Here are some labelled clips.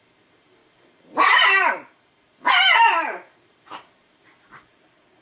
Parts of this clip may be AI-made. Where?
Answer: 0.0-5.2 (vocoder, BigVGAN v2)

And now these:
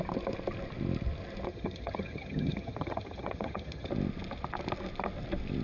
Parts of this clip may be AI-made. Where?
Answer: 1.5-3.9 (vocoder, HiFi-GAN)

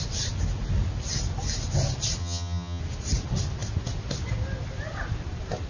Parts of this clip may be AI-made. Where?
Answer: 2.2-2.8 (vocoder, HiFi-GAN)

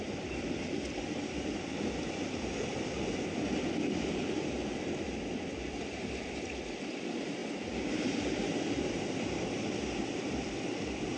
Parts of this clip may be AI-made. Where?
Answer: 0.0-4.6 (vocoder, BigVGAN v2); 5.6-11.2

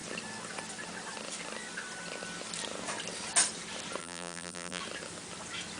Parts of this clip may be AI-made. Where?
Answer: 4.0-4.8 (vocoder, BigVGAN v2)

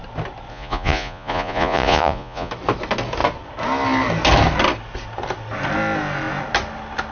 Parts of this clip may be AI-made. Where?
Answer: 0.5-2.5 (vocoder, Vocos)

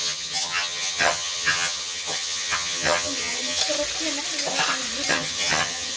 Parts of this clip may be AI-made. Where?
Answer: 0.0-3.6 (vocoder, HiFi-GAN); 5.1-6.0